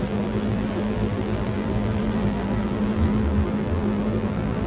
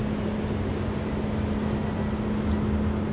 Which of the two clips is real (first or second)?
second